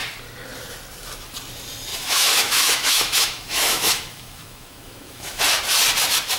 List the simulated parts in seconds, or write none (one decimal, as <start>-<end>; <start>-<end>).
1.9-5.4